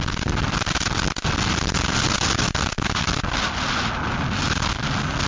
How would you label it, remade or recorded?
recorded